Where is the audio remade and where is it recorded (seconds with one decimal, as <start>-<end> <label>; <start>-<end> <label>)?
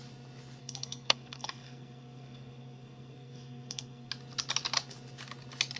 0.0-0.6 recorded; 0.6-4.1 remade; 4.1-5.8 recorded